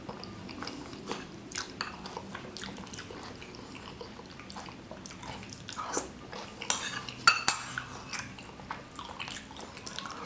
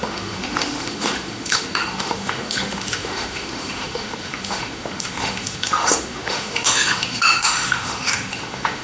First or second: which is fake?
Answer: second